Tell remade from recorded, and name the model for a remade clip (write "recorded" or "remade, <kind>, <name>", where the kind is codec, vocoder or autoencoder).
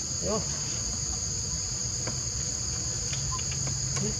recorded